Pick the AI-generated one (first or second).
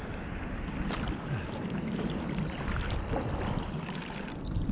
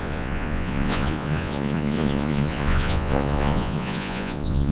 second